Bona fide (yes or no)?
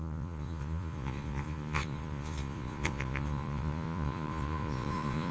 no